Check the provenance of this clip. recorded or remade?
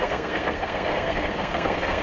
remade